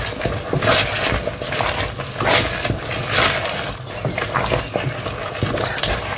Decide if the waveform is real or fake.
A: real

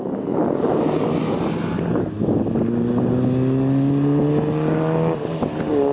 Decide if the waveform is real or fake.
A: real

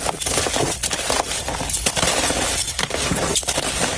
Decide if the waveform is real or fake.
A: real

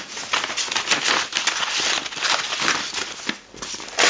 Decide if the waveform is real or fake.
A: real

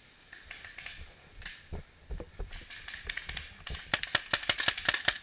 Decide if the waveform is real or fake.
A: real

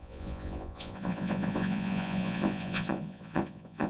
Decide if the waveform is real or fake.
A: fake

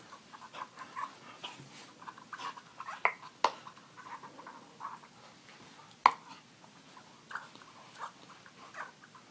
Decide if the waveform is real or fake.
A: real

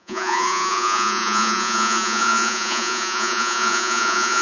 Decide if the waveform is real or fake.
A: fake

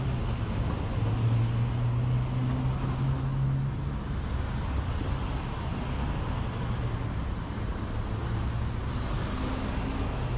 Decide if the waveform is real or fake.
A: real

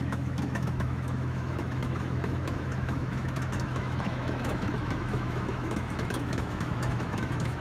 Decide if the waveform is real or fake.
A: fake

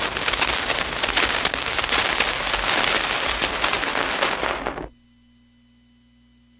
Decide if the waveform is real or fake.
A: real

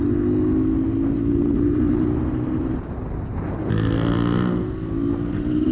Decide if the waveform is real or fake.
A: real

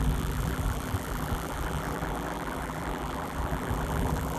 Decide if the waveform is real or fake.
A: fake